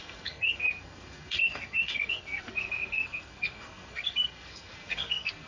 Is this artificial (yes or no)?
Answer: yes